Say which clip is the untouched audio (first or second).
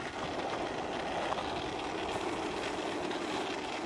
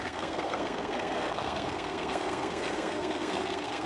first